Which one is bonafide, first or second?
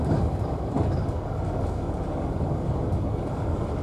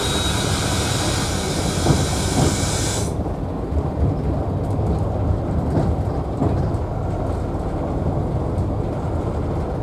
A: second